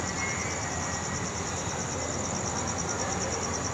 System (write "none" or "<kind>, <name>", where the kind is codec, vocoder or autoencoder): none